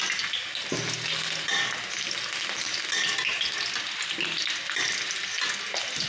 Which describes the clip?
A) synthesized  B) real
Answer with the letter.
B